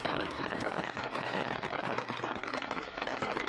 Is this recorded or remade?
remade